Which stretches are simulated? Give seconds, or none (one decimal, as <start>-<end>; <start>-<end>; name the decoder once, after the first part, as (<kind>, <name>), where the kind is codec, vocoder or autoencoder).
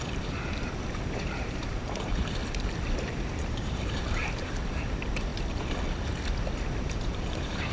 0.0-2.4 (vocoder, BigVGAN v2); 3.1-5.3; 6.9-7.7